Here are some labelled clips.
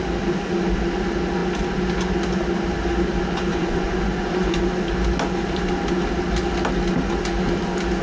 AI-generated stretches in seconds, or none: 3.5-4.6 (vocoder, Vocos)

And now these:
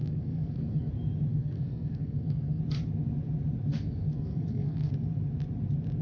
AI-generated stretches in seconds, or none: 0.0-0.9 (codec, SNAC); 1.3-2.6; 3.7-4.9